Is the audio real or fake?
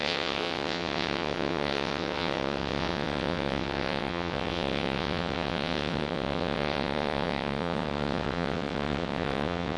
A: fake